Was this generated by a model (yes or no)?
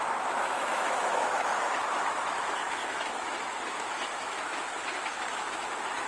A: yes